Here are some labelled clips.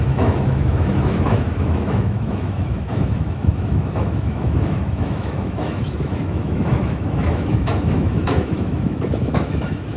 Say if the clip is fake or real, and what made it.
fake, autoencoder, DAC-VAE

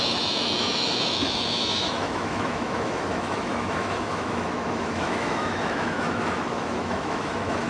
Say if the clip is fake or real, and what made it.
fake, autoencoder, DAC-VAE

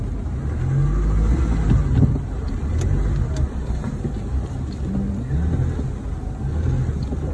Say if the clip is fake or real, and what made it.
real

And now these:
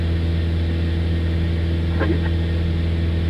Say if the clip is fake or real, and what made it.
real